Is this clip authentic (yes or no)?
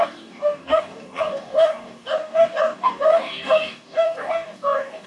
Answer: no